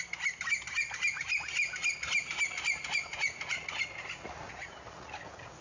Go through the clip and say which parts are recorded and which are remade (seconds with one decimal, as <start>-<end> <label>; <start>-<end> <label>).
0.0-3.1 recorded; 3.1-5.6 remade